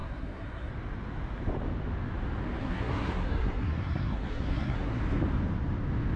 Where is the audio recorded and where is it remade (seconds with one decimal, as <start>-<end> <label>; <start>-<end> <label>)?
0.0-0.7 remade; 0.7-2.6 recorded; 2.6-5.0 remade; 5.0-6.2 recorded